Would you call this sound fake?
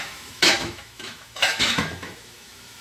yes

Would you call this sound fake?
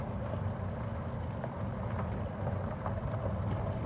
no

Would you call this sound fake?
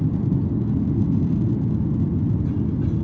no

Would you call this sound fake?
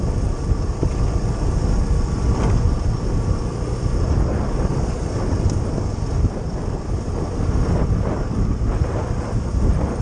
no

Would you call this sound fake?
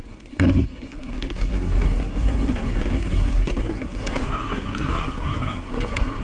yes